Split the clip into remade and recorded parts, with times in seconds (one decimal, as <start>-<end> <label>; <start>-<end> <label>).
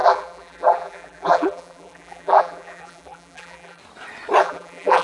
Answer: 0.0-3.8 remade; 3.8-4.4 recorded; 4.4-5.0 remade